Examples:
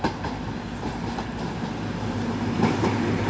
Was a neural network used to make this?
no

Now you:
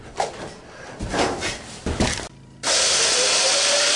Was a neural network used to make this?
yes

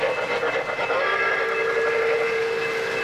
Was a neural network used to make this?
no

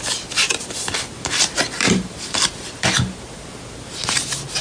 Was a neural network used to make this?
no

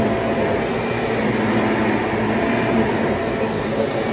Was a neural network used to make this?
no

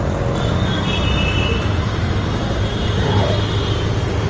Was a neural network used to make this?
no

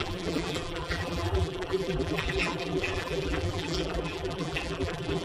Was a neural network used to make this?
yes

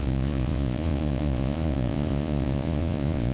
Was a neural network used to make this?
yes